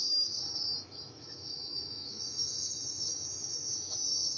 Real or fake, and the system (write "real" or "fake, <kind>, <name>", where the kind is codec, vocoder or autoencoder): fake, autoencoder, DAC-VAE